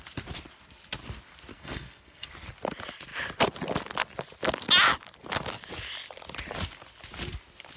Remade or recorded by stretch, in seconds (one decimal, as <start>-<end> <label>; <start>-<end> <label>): 0.0-1.5 recorded; 1.5-2.3 remade; 2.3-7.8 recorded